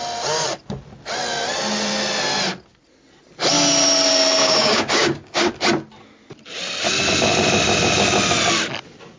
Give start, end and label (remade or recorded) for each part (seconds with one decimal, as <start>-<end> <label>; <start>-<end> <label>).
0.0-4.4 recorded; 4.4-5.5 remade; 5.5-9.2 recorded